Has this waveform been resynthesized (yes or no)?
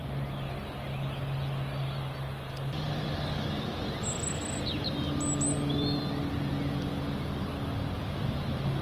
no